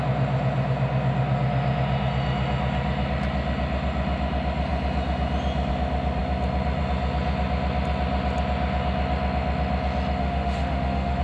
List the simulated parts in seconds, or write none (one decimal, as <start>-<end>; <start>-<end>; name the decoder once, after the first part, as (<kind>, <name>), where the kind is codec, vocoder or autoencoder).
10.2-11.2 (autoencoder, DAC-VAE)